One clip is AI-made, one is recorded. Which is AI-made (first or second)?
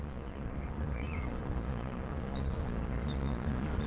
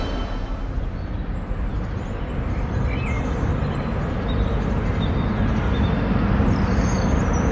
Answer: first